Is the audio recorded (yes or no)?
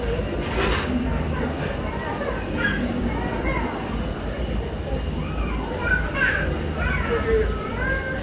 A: yes